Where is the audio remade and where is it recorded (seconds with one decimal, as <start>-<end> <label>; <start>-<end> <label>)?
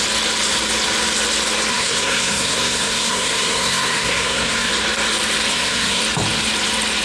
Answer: 0.0-1.7 recorded; 1.7-4.7 remade; 4.7-5.5 recorded; 5.5-6.0 remade; 6.0-7.0 recorded